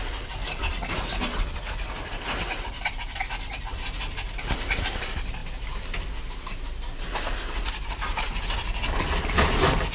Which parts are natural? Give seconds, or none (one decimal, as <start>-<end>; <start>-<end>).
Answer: 0.0-9.9